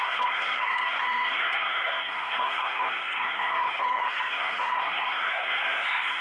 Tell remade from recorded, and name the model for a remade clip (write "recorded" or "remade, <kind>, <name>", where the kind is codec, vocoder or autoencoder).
remade, codec, SNAC